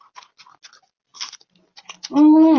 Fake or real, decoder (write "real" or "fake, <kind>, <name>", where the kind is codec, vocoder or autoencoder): real